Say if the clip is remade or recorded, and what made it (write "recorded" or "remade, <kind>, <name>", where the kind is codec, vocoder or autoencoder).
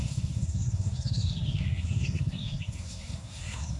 remade, codec, SNAC